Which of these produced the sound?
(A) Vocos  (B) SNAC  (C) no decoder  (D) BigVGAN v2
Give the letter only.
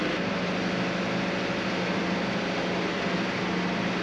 C